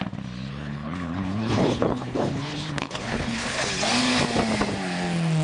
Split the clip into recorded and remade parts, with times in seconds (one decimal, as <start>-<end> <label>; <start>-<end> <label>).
0.0-0.5 recorded; 0.5-3.7 remade; 3.7-5.4 recorded